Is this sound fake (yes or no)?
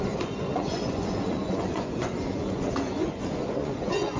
yes